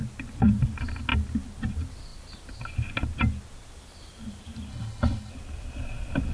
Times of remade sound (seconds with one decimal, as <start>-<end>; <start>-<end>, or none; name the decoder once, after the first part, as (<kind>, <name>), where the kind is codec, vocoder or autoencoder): 4.7-5.3 (codec, HILCodec)